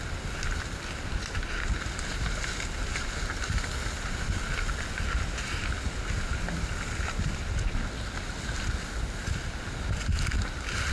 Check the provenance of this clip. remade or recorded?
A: recorded